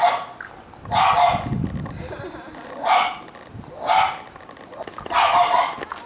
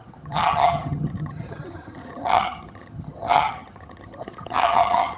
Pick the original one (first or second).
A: first